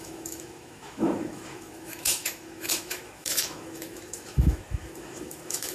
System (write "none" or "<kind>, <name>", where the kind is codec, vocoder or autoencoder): autoencoder, DAC-VAE